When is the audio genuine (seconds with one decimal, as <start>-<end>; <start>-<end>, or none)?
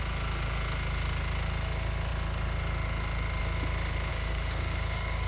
0.0-4.1